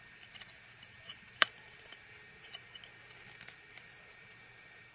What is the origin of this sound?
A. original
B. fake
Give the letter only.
A